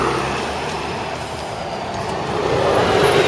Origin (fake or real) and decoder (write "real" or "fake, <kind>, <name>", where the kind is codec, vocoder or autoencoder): real